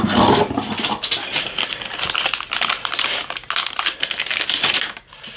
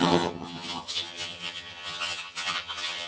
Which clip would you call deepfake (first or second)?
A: second